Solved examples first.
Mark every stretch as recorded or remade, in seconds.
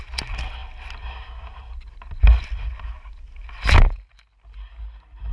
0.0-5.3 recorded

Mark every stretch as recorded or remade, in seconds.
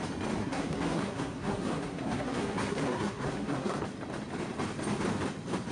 0.0-0.4 recorded; 0.4-3.8 remade; 3.8-5.7 recorded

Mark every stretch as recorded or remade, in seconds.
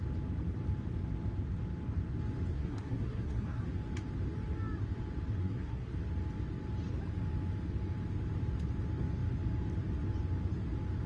0.0-2.5 recorded; 2.5-3.6 remade; 3.6-5.4 recorded; 5.4-5.9 remade; 5.9-11.1 recorded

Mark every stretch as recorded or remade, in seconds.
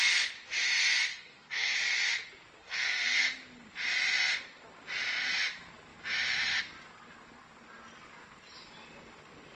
0.0-1.1 recorded; 1.1-1.8 remade; 1.8-2.6 recorded; 2.6-3.2 remade; 3.2-9.5 recorded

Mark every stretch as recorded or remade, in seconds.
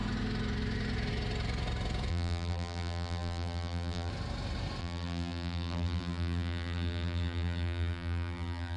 0.0-2.1 recorded; 2.1-4.1 remade; 4.1-4.8 recorded; 4.8-8.8 remade